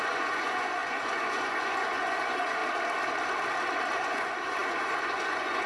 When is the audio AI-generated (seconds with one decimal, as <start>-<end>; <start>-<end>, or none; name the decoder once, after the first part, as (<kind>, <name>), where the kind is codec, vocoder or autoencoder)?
0.0-2.6 (vocoder, Vocos); 4.0-5.7